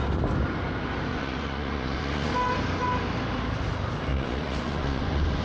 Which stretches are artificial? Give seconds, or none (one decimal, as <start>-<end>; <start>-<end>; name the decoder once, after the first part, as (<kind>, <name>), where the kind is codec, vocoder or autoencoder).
1.1-2.3 (vocoder, Vocos); 4.1-5.4